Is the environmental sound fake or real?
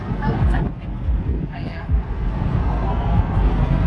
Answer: fake